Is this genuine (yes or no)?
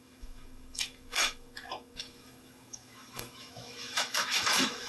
no